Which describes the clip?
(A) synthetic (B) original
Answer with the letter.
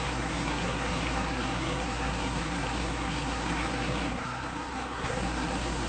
A